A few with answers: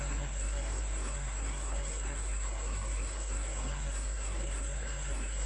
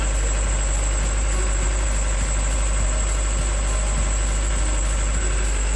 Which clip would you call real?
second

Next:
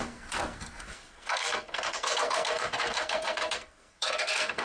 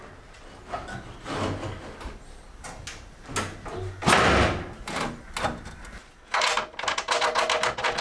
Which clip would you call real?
second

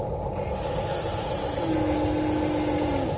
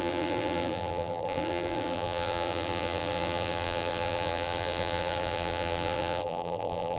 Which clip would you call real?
first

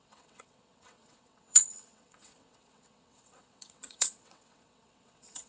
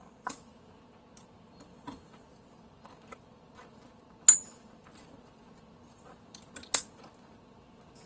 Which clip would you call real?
second